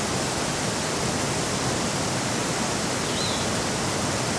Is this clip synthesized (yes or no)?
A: no